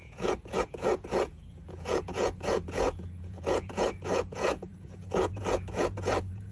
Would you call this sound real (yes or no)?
no